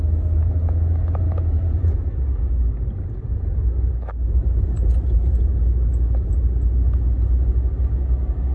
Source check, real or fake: real